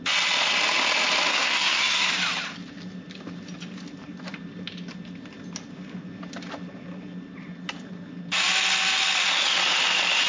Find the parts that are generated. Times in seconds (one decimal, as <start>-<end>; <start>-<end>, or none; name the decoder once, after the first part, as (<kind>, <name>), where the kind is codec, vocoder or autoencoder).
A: 1.3-2.1 (codec, SNAC)